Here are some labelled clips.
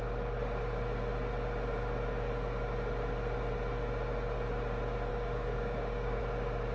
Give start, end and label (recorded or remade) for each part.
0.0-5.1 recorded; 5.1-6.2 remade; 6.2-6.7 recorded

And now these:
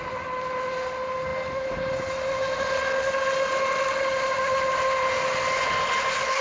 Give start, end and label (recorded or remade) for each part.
0.0-6.4 recorded